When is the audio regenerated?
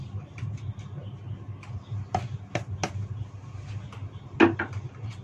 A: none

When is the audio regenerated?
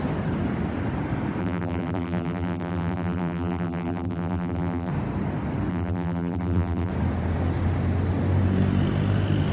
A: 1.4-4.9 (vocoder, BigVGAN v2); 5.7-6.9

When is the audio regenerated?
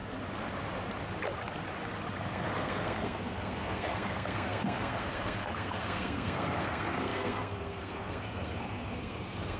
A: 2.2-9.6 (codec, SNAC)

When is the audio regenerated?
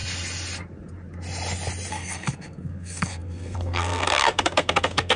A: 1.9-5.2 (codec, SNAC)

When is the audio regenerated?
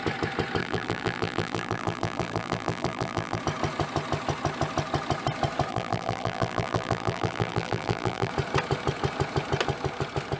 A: 0.6-3.4 (vocoder, BigVGAN v2); 5.7-8.3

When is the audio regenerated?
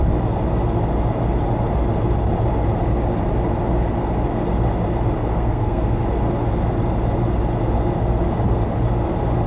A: 5.3-6.0 (codec, SNAC)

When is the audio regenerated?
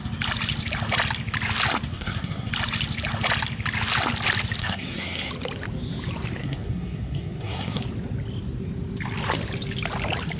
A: 1.9-2.5 (codec, SNAC); 4.6-5.3; 6.4-7.8